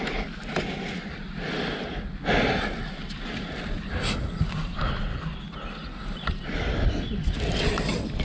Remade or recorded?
recorded